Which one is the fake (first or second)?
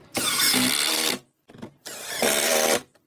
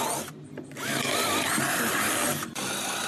first